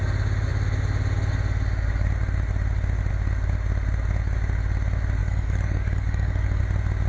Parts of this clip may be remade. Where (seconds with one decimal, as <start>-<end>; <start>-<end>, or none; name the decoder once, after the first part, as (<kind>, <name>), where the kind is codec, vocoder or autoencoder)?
5.2-6.6 (codec, DAC)